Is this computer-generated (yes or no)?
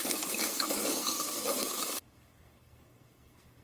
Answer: yes